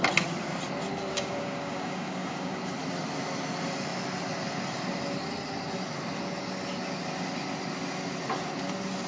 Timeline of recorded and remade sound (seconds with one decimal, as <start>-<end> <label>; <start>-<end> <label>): 0.0-1.1 recorded; 1.1-2.6 remade; 2.6-9.1 recorded